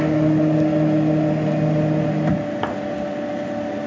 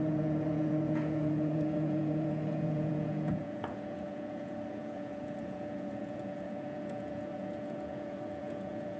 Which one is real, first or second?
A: first